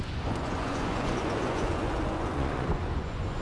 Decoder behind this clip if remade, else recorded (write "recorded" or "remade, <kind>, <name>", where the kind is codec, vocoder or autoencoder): remade, vocoder, Vocos